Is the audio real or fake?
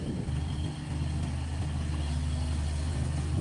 real